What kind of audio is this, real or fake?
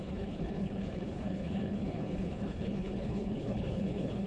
fake